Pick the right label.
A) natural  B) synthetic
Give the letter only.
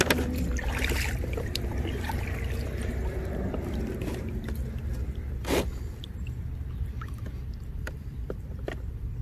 B